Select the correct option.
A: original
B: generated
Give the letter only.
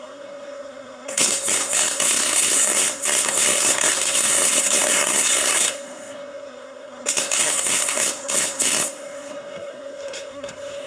B